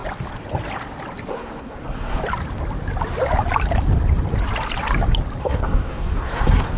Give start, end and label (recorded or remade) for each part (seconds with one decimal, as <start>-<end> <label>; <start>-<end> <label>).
0.0-1.3 recorded; 1.3-2.2 remade; 2.2-5.4 recorded; 5.4-6.8 remade